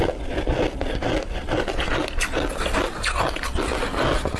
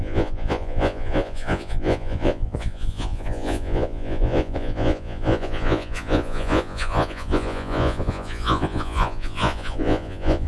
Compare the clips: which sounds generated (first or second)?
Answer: second